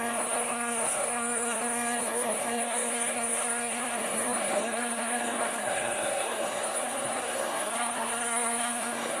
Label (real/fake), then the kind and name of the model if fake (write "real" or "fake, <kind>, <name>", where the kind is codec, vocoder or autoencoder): fake, codec, SNAC